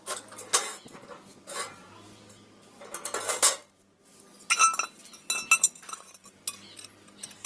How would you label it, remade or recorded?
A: recorded